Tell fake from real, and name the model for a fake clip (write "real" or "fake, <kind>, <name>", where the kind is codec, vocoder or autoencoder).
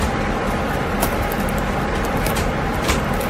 real